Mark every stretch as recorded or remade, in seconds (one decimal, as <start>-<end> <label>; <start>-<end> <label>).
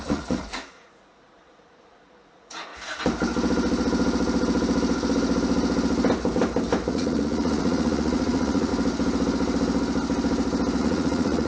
0.0-2.7 remade; 2.7-6.9 recorded; 6.9-8.7 remade; 8.7-10.8 recorded; 10.8-11.5 remade